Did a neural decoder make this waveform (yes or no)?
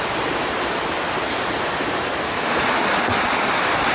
no